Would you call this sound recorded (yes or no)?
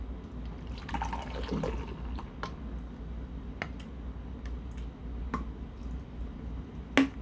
yes